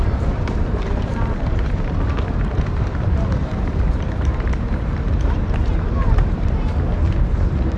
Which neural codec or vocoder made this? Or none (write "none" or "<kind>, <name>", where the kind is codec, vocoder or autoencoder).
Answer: vocoder, BigVGAN v2